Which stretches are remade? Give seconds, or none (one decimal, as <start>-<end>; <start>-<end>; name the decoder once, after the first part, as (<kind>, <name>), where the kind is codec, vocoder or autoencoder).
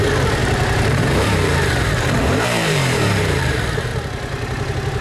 0.0-3.9 (vocoder, BigVGAN v2)